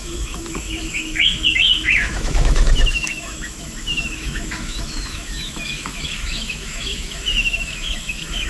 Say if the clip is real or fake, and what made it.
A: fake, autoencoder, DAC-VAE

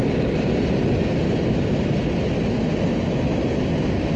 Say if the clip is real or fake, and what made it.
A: real